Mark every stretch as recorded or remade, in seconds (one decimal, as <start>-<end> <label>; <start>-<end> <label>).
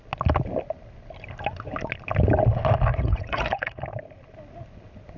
0.0-2.9 recorded; 2.9-3.8 remade; 3.8-5.2 recorded